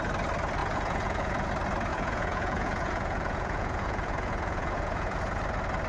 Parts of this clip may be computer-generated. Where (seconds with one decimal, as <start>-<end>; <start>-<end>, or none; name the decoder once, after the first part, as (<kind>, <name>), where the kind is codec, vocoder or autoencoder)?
0.6-1.5 (vocoder, Vocos); 1.9-5.4